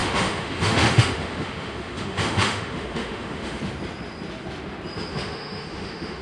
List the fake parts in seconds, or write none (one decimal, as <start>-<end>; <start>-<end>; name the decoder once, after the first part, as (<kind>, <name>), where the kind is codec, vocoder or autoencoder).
0.0-3.6 (autoencoder, DAC-VAE); 5.1-6.2